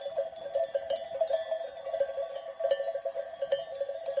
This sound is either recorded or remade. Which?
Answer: recorded